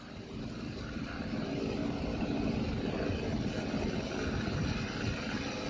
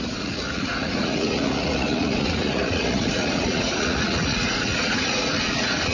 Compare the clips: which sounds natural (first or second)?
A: first